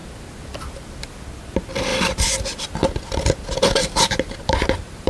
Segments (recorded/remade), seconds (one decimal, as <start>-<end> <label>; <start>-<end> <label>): 0.0-1.9 recorded; 1.9-2.9 remade; 2.9-3.8 recorded; 3.8-5.1 remade